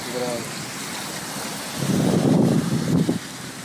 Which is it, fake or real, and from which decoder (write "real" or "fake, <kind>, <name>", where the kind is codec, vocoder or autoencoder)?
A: fake, vocoder, BigVGAN v2